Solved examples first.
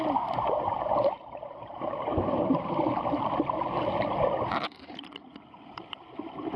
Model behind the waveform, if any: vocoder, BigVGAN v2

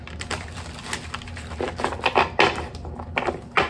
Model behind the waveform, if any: none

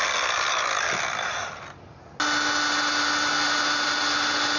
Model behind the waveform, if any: none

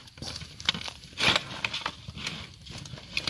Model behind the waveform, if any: none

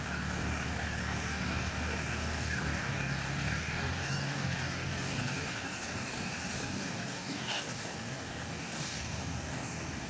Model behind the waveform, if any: codec, DAC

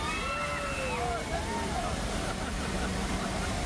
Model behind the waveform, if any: none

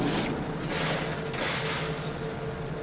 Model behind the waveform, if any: none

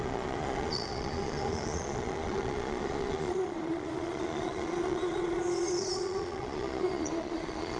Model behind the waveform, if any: vocoder, Vocos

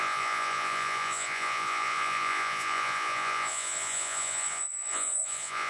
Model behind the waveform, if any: vocoder, Vocos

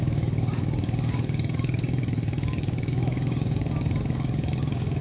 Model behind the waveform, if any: codec, DAC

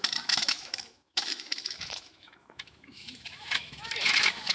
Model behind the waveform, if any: autoencoder, DAC-VAE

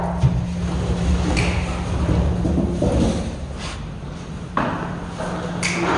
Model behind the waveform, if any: none